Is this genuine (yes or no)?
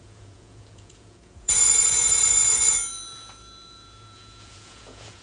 no